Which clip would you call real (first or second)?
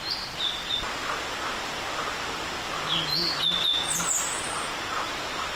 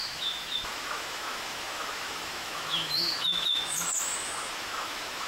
first